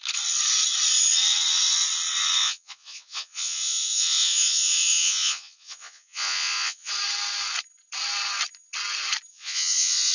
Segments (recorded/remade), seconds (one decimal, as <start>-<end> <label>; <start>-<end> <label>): 0.0-2.4 recorded; 2.4-6.9 remade; 6.9-9.3 recorded; 9.3-10.1 remade